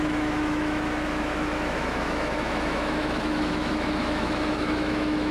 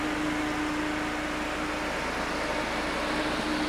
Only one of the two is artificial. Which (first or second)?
first